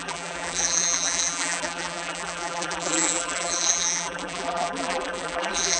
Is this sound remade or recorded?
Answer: remade